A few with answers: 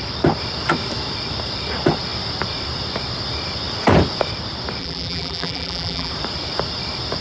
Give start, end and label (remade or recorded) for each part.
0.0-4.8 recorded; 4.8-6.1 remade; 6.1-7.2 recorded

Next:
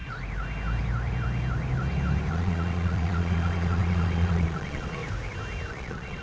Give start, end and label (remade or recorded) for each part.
0.0-2.3 recorded; 2.3-5.0 remade; 5.0-5.7 recorded; 5.7-6.2 remade

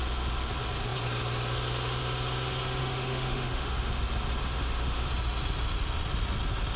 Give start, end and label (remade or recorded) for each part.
0.0-2.8 recorded; 2.8-3.9 remade; 3.9-4.4 recorded; 4.4-5.1 remade; 5.1-6.8 recorded

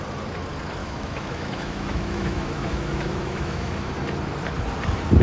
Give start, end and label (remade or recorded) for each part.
0.0-0.8 recorded; 0.8-3.9 remade; 3.9-5.2 recorded

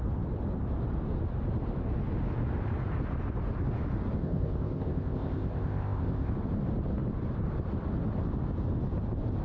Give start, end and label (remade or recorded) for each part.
0.0-4.2 recorded; 4.2-6.3 remade; 6.3-9.4 recorded